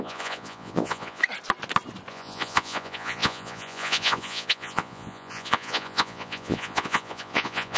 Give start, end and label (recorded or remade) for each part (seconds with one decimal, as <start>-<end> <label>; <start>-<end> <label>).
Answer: 0.0-1.2 remade; 1.2-2.1 recorded; 2.1-7.8 remade